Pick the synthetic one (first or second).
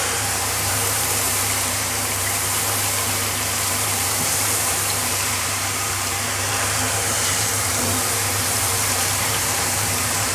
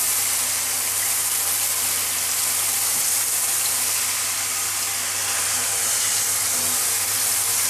first